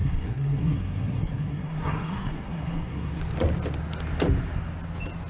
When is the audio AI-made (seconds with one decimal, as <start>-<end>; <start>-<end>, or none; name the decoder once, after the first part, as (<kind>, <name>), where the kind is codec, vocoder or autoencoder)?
0.0-3.2 (codec, SNAC)